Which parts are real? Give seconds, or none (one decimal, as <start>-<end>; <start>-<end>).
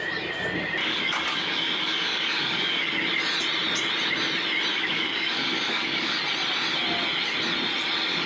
0.0-0.8; 3.0-4.7; 6.2-8.3